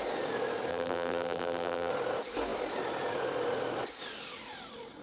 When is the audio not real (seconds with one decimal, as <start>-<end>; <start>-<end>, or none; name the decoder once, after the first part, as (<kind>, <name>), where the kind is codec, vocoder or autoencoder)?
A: 0.7-1.9 (vocoder, BigVGAN v2)

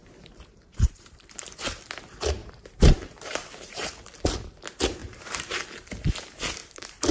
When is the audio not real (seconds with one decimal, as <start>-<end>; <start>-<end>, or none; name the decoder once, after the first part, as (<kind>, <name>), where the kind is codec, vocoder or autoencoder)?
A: 0.0-1.6 (vocoder, BigVGAN v2); 2.4-3.9; 5.0-5.6; 6.6-7.1

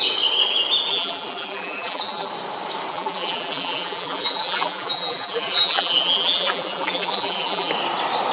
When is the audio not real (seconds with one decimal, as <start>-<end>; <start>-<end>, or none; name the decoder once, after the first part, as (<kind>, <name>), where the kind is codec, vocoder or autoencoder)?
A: 0.9-2.3 (vocoder, BigVGAN v2); 2.9-7.7